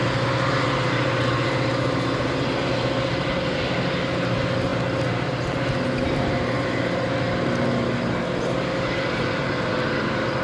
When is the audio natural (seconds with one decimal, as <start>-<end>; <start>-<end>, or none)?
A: 0.0-10.4

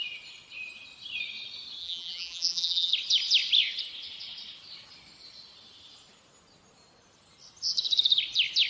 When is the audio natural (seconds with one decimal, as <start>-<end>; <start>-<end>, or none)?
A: 0.0-1.8; 2.9-8.7

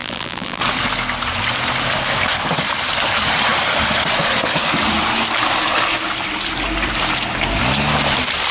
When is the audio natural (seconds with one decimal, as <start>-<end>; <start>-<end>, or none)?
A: 0.6-8.5